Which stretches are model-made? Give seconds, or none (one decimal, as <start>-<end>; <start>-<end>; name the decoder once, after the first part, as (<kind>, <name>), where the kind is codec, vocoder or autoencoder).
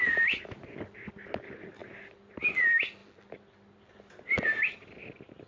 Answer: none